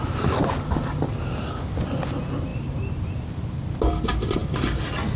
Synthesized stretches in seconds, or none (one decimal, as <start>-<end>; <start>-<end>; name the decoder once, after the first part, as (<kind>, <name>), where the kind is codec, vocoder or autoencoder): none